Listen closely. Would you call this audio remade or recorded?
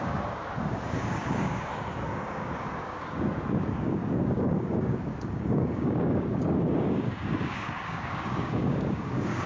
remade